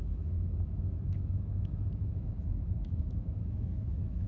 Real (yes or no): no